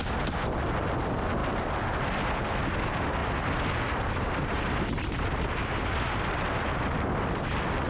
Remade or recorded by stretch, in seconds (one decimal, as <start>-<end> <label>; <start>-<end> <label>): 0.0-1.4 recorded; 1.4-2.0 remade; 2.0-3.2 recorded; 3.2-7.4 remade; 7.4-7.9 recorded